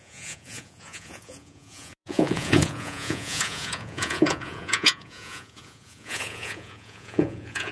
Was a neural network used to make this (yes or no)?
yes